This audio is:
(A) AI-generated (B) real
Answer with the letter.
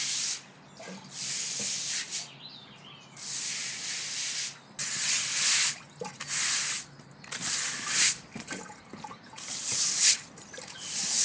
B